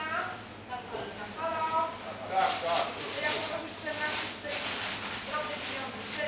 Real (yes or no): yes